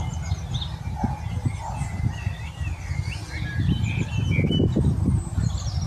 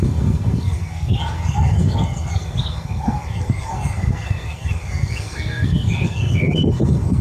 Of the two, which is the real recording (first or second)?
first